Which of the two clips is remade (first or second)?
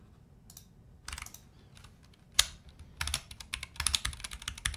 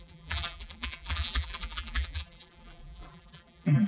second